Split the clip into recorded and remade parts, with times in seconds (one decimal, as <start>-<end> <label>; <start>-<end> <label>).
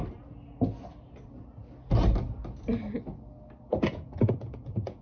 0.0-3.7 recorded; 3.7-5.0 remade